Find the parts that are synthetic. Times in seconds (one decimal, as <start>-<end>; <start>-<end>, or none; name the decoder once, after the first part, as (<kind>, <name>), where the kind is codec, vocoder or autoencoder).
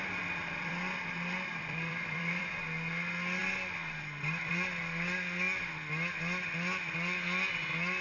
0.4-2.6 (vocoder, BigVGAN v2)